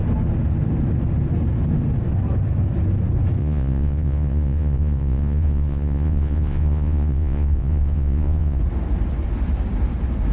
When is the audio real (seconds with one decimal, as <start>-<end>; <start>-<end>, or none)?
0.0-3.4; 8.6-10.3